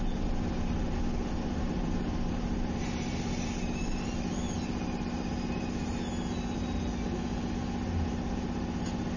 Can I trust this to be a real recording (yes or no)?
yes